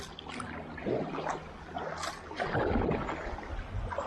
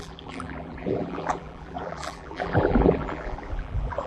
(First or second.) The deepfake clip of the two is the second